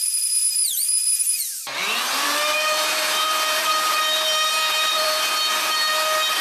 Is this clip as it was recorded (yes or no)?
no